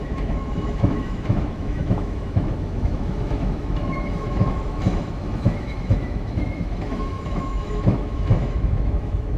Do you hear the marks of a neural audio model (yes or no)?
yes